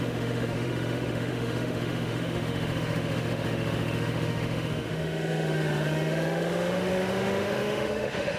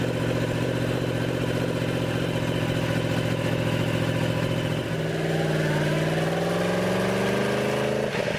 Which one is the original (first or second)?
second